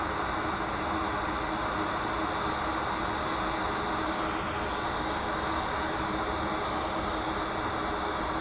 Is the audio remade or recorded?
recorded